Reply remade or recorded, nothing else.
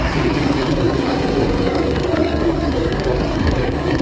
remade